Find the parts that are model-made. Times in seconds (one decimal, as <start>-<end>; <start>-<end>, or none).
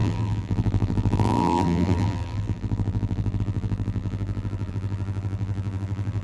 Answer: 0.0-6.2